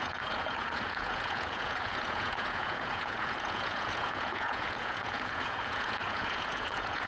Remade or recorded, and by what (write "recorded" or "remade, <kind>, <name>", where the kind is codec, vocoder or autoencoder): remade, vocoder, Vocos